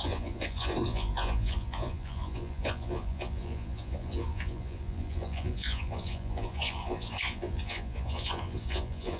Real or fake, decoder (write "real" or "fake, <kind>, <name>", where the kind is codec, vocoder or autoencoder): fake, vocoder, Vocos